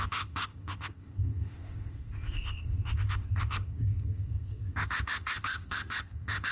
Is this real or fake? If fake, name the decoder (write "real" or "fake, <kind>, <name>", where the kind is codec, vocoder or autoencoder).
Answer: fake, codec, ZipCodec